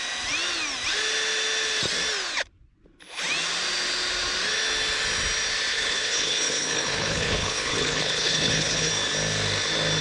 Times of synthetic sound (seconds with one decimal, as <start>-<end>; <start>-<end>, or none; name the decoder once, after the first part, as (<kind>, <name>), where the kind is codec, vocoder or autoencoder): 5.7-8.9 (codec, HILCodec)